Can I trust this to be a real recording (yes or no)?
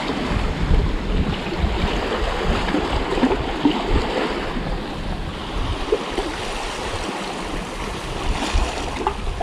yes